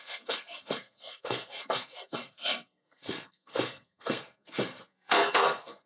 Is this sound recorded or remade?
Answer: remade